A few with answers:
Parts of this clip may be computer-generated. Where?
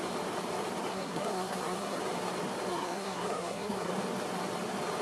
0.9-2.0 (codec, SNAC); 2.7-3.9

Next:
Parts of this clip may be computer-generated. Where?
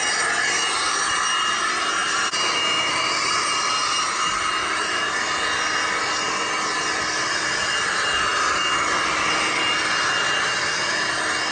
none